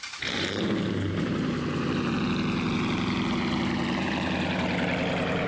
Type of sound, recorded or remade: remade